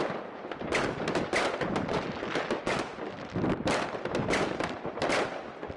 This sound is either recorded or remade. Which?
recorded